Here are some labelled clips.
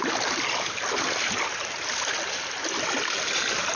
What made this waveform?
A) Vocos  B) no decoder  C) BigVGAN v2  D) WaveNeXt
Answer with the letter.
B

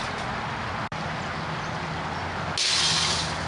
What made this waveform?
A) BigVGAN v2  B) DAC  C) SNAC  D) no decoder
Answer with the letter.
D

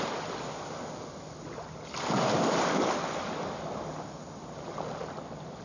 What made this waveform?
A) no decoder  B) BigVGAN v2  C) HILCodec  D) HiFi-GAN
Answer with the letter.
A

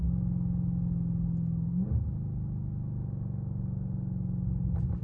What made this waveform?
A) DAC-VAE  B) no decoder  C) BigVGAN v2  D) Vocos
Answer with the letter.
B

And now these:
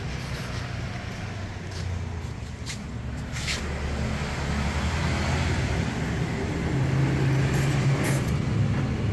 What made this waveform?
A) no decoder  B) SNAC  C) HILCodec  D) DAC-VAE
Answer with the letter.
A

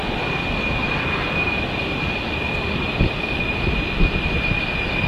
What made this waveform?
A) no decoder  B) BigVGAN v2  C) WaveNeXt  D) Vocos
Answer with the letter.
A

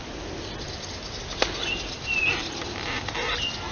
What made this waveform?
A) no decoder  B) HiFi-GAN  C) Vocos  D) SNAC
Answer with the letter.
A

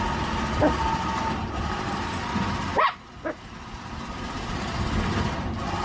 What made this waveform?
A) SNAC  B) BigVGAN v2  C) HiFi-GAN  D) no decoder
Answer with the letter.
D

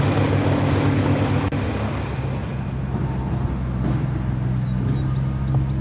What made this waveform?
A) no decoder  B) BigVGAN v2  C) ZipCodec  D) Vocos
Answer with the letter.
A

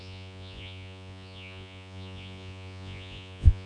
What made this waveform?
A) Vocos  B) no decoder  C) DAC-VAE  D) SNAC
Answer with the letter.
A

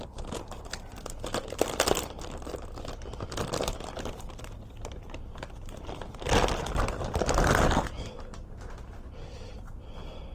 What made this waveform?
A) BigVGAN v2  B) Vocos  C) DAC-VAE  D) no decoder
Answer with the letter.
D